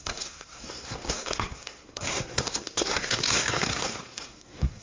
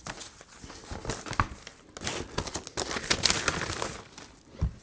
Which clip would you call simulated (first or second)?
first